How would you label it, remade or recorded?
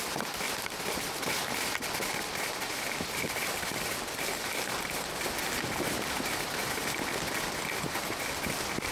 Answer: recorded